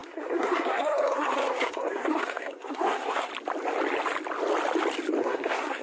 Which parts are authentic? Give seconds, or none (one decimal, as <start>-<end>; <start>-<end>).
3.3-5.2